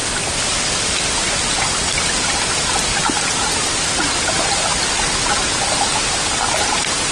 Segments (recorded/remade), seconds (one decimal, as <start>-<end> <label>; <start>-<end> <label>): 0.0-7.1 recorded